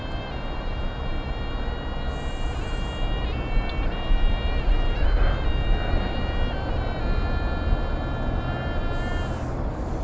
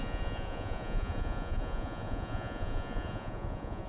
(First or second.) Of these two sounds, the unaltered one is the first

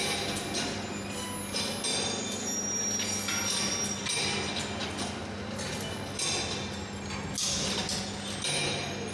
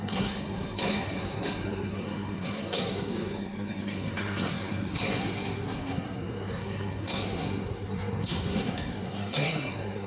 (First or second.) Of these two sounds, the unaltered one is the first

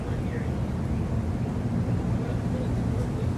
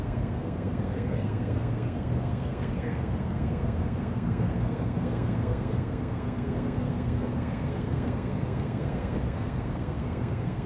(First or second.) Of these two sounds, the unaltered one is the first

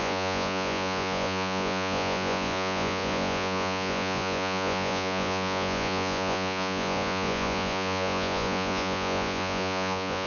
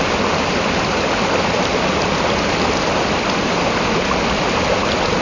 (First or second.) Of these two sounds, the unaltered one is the second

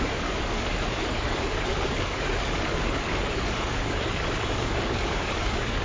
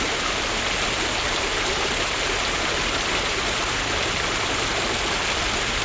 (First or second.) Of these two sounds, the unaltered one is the second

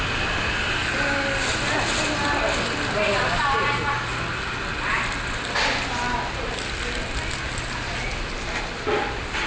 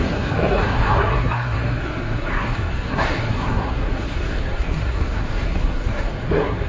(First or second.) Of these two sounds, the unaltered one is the first